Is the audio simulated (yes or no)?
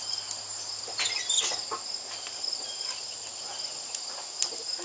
no